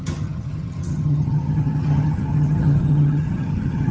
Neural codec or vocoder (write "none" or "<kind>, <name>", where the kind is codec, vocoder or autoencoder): vocoder, HiFi-GAN